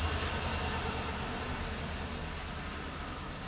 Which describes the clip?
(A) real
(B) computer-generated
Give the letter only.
A